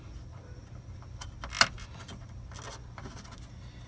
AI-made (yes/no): no